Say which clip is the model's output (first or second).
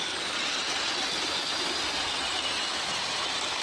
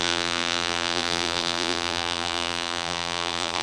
second